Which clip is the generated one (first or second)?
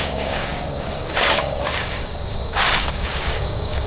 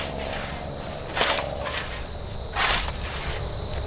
first